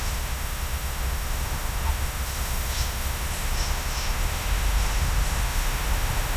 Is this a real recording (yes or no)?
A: no